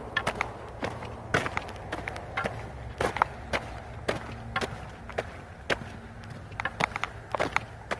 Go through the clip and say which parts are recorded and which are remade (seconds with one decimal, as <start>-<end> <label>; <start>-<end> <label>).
0.0-8.0 recorded